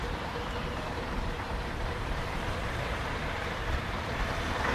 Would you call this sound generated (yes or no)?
yes